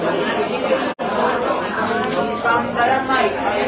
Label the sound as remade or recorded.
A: recorded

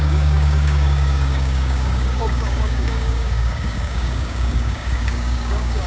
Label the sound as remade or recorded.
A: remade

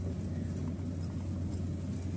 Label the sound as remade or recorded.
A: recorded